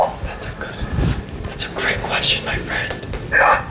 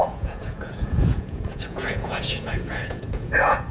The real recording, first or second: first